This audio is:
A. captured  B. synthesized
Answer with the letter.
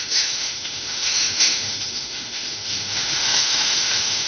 B